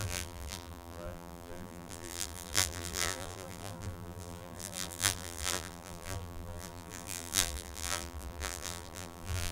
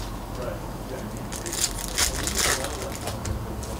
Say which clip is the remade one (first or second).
first